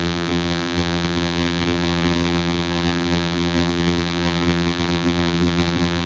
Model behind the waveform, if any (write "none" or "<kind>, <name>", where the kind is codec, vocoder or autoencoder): vocoder, BigVGAN v2